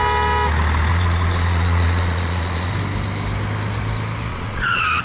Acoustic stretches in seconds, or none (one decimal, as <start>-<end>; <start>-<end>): 0.0-0.9; 2.7-4.3